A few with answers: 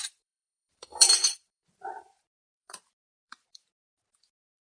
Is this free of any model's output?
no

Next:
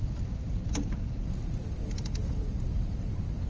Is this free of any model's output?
yes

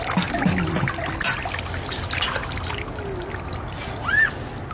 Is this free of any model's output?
yes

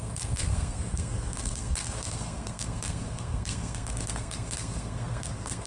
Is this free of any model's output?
no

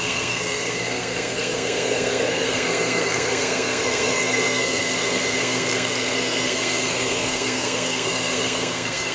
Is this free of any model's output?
no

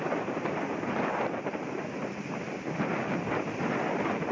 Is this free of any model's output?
yes